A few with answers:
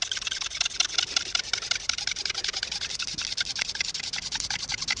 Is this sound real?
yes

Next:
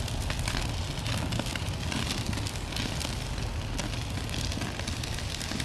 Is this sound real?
yes